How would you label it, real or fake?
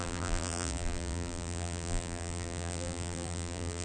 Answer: fake